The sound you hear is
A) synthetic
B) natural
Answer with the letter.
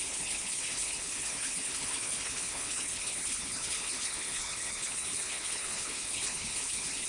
A